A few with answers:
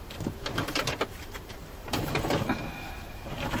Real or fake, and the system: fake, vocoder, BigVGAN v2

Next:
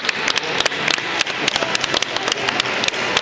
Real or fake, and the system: real